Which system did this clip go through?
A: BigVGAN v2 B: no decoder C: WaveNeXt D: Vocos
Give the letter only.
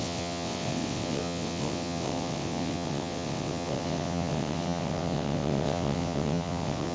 C